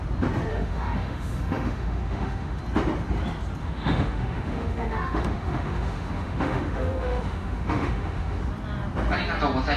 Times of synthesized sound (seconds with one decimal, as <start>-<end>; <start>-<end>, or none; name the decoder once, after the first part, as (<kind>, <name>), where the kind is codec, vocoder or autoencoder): 0.5-2.6 (autoencoder, DAC-VAE); 3.6-8.4